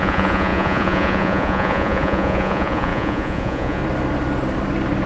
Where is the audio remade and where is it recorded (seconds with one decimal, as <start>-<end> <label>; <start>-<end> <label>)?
0.0-3.8 remade; 3.8-5.1 recorded